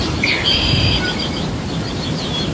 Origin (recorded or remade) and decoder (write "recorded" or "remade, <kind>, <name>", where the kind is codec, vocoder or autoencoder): remade, vocoder, BigVGAN v2